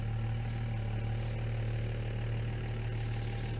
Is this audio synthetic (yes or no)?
no